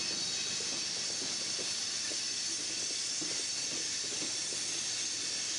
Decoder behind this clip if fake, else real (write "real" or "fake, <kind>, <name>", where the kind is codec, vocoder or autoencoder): real